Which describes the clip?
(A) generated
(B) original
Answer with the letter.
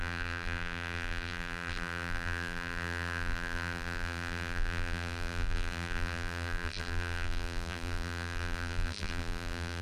A